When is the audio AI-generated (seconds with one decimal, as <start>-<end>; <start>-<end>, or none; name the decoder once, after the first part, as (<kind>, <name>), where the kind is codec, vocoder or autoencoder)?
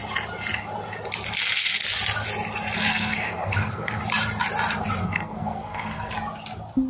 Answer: 2.9-4.0 (codec, SNAC); 5.0-6.1